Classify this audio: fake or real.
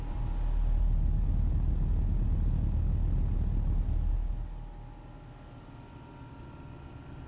real